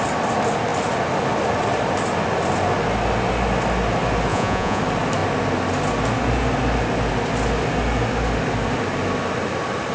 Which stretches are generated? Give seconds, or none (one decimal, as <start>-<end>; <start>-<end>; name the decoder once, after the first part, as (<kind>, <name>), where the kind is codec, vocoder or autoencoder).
4.3-4.8 (vocoder, Vocos)